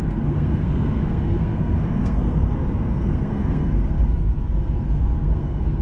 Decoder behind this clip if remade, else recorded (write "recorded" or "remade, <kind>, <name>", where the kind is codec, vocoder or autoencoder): remade, codec, SNAC